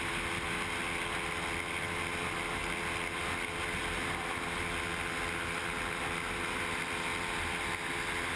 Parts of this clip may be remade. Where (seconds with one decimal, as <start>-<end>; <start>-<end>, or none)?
none